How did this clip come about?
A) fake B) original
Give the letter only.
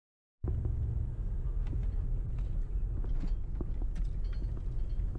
B